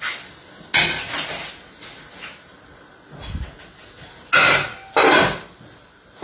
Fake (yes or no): no